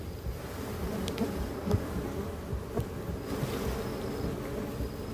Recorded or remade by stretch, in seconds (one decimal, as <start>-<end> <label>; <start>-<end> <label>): 0.0-3.1 remade; 3.1-5.1 recorded

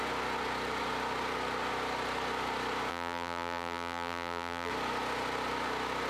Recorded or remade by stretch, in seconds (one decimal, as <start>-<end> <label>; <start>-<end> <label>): 0.0-2.9 recorded; 2.9-4.7 remade; 4.7-6.1 recorded

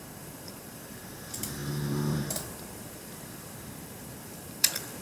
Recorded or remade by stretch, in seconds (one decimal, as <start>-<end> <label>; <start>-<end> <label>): 0.0-5.0 remade

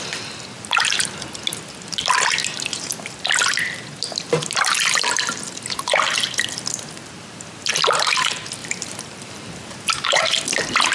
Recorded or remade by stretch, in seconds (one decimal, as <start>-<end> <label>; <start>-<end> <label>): 0.0-8.6 recorded; 8.6-10.2 remade; 10.2-10.9 recorded

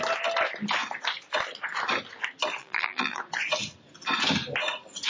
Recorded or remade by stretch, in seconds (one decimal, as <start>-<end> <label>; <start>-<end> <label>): 0.0-2.6 recorded; 2.6-3.2 remade; 3.2-5.1 recorded